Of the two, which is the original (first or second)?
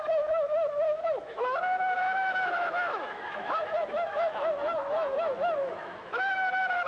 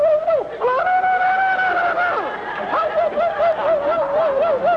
second